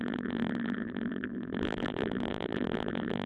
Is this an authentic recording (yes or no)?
no